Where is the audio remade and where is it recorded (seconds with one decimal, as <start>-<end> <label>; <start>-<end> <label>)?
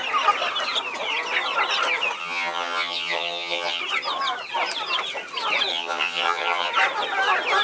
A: 0.0-2.2 recorded; 2.2-3.8 remade; 3.8-5.7 recorded; 5.7-6.7 remade; 6.7-7.6 recorded